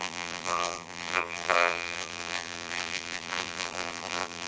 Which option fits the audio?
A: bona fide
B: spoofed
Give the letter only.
B